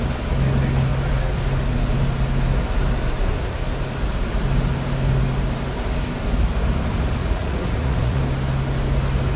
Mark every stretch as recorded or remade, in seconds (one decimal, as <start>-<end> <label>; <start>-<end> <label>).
0.0-7.2 recorded; 7.2-8.2 remade; 8.2-9.4 recorded